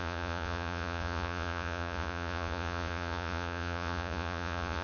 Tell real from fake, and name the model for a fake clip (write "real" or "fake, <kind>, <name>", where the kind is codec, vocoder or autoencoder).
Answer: fake, vocoder, Vocos